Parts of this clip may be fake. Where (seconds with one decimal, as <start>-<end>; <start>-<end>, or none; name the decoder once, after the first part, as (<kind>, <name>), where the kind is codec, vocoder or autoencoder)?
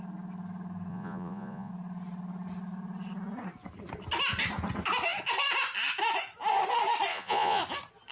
0.9-1.7 (vocoder, Vocos); 7.1-7.6